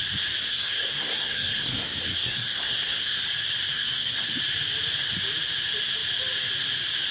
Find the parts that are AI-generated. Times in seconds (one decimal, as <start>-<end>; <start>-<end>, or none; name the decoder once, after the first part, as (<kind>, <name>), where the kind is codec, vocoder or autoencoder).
0.4-3.2 (codec, SNAC); 3.7-4.3